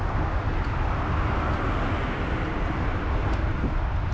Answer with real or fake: real